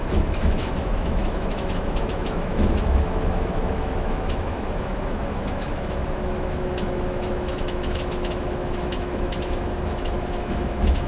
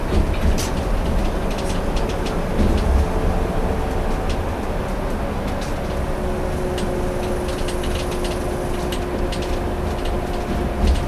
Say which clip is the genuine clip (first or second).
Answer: second